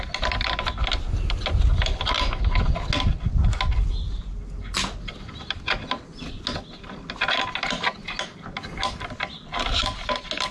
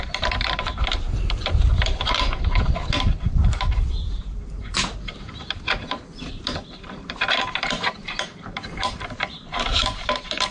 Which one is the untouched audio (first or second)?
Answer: first